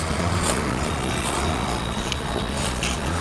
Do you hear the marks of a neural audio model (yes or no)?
yes